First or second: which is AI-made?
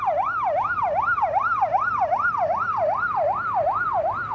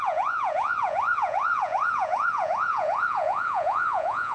second